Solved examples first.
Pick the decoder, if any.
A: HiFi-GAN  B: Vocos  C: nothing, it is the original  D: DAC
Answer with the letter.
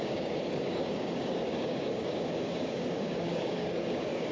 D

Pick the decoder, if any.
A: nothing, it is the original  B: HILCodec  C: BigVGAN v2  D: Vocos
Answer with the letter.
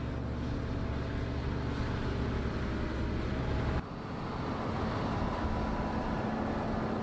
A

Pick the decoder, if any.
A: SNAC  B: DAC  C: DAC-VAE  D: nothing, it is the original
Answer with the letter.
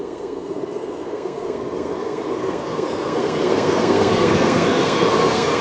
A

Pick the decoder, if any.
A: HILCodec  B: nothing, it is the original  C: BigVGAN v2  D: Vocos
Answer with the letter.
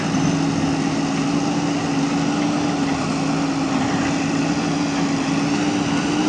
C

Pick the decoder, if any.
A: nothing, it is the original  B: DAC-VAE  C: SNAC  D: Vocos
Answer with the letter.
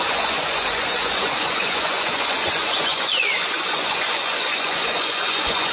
D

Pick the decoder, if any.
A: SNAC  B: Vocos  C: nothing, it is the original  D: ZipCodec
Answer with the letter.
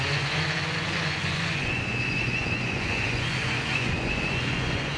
B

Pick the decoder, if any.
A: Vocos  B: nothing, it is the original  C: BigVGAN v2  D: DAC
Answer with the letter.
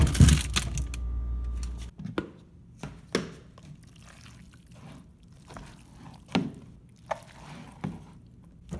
B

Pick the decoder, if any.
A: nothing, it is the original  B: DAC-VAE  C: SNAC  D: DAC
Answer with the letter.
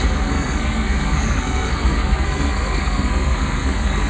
C